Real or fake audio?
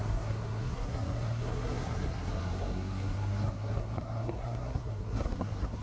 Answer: fake